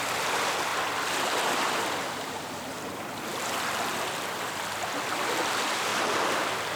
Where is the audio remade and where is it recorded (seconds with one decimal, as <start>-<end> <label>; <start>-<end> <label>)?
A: 0.0-0.7 remade; 0.7-2.5 recorded; 2.5-5.9 remade; 5.9-6.8 recorded